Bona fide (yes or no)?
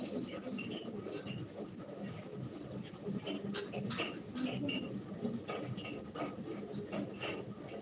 yes